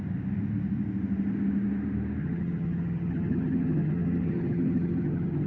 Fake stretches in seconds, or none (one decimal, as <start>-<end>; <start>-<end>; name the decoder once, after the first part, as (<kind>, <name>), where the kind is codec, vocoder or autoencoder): 2.2-5.5 (vocoder, HiFi-GAN)